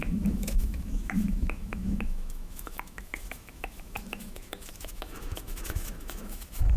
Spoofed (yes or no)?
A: yes